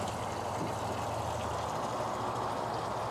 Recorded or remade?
recorded